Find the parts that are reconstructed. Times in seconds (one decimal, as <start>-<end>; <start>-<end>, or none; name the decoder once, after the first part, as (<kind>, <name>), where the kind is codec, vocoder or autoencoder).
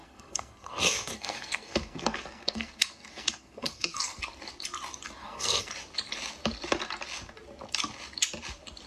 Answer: 0.0-4.2 (codec, SNAC); 5.2-5.7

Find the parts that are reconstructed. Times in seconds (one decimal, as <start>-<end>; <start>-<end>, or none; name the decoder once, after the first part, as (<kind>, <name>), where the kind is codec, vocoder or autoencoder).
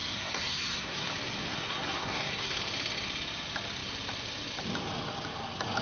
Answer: 0.0-1.1 (codec, SNAC); 1.5-2.6